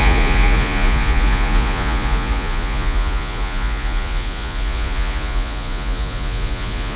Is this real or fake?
fake